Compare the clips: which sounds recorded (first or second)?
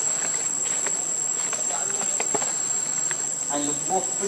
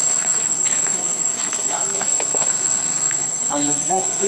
first